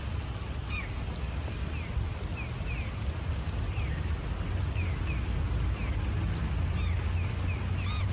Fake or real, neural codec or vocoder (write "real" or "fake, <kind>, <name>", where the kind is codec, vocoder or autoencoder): real